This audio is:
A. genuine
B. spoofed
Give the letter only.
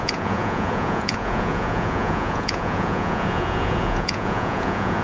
B